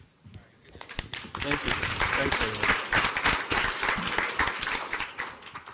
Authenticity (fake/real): real